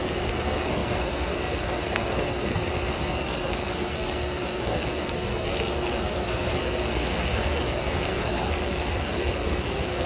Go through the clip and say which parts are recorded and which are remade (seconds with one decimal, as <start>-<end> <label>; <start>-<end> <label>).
0.0-10.1 remade